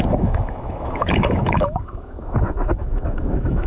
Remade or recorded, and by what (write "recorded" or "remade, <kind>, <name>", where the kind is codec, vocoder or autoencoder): remade, autoencoder, DAC-VAE